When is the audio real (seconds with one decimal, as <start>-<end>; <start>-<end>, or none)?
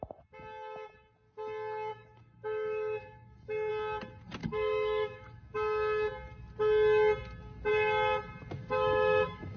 0.0-1.9; 3.7-4.4; 5.4-8.6